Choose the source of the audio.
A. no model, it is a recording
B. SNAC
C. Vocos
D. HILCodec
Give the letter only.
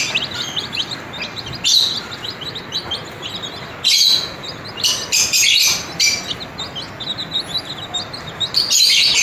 A